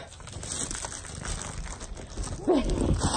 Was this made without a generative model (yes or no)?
yes